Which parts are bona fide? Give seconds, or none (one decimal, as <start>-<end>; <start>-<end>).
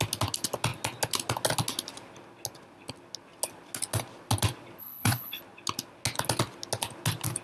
0.0-4.8; 5.4-7.4